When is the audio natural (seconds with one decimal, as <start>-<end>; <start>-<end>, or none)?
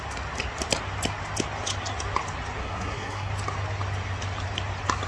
0.0-2.6; 3.3-5.1